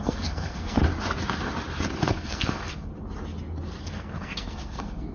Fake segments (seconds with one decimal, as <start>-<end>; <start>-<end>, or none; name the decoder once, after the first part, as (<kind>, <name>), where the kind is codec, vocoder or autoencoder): 0.0-0.8 (codec, SNAC); 2.1-2.9; 3.8-5.1